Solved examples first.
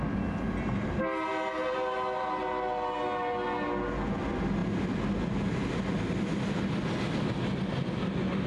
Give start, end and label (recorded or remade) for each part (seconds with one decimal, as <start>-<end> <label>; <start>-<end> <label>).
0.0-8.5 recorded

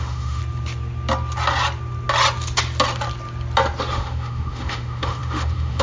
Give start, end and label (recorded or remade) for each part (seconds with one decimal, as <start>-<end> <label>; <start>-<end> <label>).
0.0-0.4 remade; 0.4-3.9 recorded; 3.9-5.8 remade

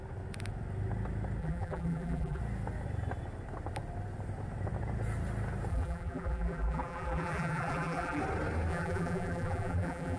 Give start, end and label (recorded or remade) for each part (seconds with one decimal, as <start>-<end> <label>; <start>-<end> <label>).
0.0-1.4 recorded; 1.4-2.4 remade; 2.4-5.7 recorded; 5.7-8.2 remade; 8.2-8.7 recorded; 8.7-10.2 remade